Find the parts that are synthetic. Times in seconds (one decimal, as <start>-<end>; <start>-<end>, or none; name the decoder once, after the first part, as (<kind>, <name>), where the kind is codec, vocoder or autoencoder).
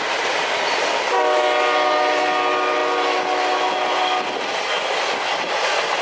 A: none